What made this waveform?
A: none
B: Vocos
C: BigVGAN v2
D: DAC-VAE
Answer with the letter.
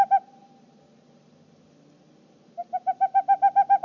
A